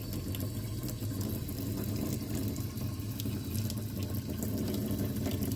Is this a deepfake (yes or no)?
no